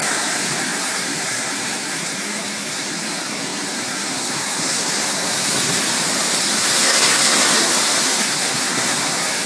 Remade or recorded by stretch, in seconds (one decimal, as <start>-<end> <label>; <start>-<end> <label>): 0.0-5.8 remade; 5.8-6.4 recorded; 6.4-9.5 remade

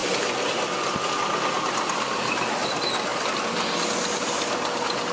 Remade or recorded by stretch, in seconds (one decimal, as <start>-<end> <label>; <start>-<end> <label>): 0.0-5.1 recorded

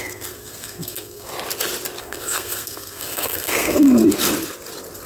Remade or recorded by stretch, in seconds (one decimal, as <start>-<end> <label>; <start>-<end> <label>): 0.0-1.3 remade; 1.3-2.0 recorded; 2.0-4.0 remade; 4.0-5.1 recorded

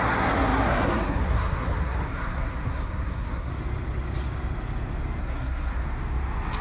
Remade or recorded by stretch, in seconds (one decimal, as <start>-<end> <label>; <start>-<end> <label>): 0.0-3.5 remade; 3.5-5.2 recorded; 5.2-5.8 remade; 5.8-6.6 recorded

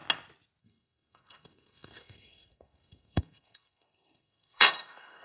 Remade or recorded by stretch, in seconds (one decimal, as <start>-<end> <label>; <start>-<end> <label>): 0.0-0.6 recorded; 0.6-5.2 remade

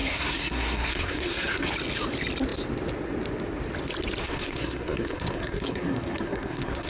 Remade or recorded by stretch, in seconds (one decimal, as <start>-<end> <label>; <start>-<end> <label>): 0.0-1.7 remade; 1.7-4.2 recorded; 4.2-6.9 remade